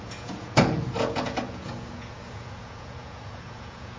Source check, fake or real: fake